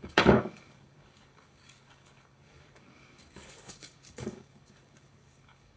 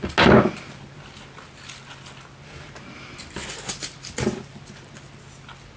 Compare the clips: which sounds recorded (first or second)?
second